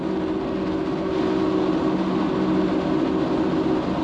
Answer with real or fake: real